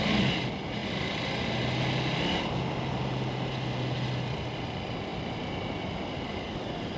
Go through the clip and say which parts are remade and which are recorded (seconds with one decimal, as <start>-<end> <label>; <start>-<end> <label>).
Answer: 0.0-7.0 recorded